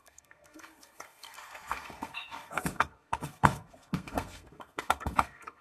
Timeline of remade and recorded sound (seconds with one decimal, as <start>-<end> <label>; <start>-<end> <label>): 0.0-5.6 remade